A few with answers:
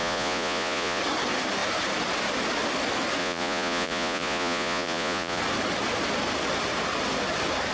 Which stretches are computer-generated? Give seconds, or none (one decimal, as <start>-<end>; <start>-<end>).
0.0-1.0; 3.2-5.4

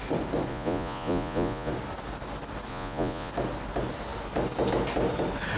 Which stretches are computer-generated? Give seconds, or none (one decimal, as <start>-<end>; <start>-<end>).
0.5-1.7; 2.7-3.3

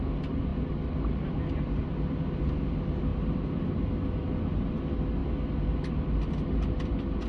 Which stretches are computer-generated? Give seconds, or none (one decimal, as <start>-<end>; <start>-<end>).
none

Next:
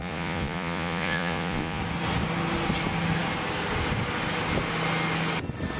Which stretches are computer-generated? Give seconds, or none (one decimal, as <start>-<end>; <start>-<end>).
0.0-1.8

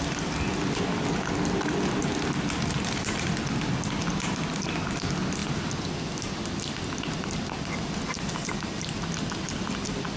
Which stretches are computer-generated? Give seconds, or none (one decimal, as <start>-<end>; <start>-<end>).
none

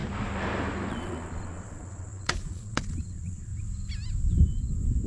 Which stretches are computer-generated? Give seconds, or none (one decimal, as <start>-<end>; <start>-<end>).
0.9-3.5

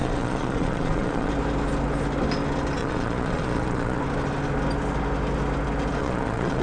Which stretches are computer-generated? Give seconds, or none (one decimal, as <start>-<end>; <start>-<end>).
0.0-1.3; 2.8-4.0; 6.0-6.6

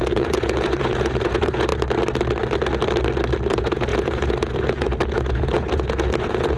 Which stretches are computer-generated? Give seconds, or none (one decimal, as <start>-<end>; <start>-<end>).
0.0-1.7; 3.5-6.6